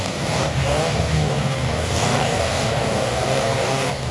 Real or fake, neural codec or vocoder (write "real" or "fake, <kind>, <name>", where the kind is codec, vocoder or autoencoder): fake, codec, DAC